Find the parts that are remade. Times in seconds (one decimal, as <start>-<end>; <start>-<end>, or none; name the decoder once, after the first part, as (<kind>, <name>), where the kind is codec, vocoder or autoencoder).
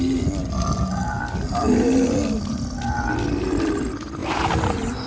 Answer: none